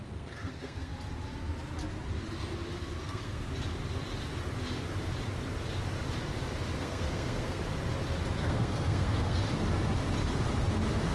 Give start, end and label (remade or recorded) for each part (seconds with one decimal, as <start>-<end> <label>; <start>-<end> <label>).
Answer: 0.0-0.9 remade; 0.9-3.0 recorded; 3.0-3.5 remade; 3.5-6.8 recorded; 6.8-7.6 remade; 7.6-8.4 recorded; 8.4-9.4 remade; 9.4-11.1 recorded